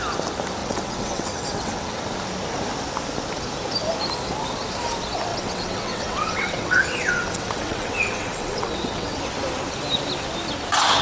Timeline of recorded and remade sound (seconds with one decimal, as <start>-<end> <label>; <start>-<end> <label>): 0.0-0.6 recorded; 0.6-2.0 remade; 2.0-5.3 recorded; 5.3-9.2 remade; 9.2-11.0 recorded